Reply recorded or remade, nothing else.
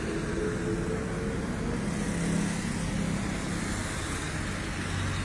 recorded